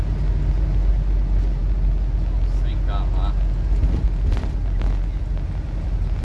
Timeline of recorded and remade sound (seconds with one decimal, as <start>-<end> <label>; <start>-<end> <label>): 0.0-6.2 recorded